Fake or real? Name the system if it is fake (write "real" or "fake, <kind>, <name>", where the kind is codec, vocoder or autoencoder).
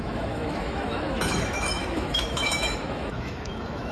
fake, autoencoder, DAC-VAE